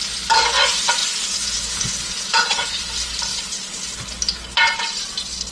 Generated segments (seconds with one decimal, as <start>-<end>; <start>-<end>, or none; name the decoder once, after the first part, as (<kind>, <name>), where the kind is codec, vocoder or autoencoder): 1.0-2.8 (vocoder, Vocos)